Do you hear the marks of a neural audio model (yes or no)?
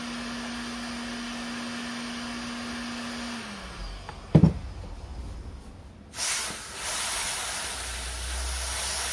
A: no